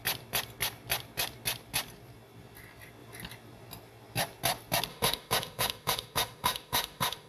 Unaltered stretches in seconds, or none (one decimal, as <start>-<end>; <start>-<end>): 0.0-4.9